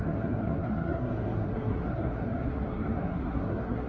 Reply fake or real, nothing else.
fake